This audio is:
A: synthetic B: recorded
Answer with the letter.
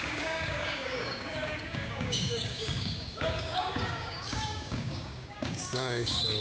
A